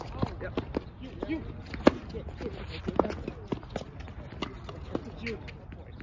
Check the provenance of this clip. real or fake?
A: real